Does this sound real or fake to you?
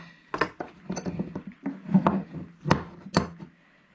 real